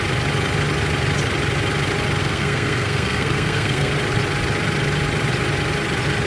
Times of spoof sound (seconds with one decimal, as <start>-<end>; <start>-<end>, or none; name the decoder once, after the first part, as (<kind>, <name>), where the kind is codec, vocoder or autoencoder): 2.2-3.9 (codec, SNAC)